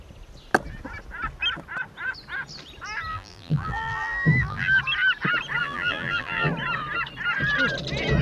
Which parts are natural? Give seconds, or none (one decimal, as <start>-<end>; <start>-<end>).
0.0-3.1; 4.8-5.6; 6.5-8.2